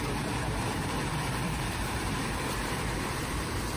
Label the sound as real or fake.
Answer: fake